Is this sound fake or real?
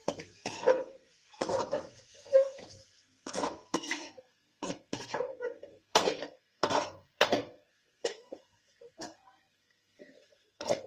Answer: fake